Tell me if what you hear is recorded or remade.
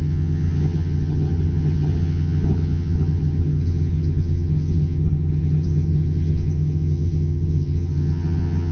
remade